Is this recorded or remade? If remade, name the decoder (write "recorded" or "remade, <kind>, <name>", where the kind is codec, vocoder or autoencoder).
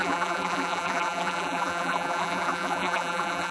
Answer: remade, vocoder, BigVGAN v2